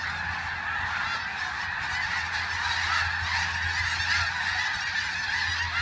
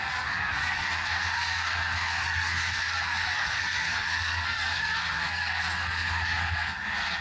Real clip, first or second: first